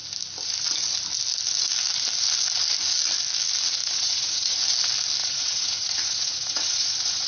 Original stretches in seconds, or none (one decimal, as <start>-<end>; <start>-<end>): 0.0-3.8; 4.6-5.2